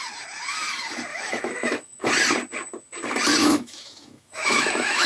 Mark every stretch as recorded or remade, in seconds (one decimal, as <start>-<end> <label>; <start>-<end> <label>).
0.0-1.1 recorded; 1.1-2.1 remade; 2.1-3.4 recorded; 3.4-5.1 remade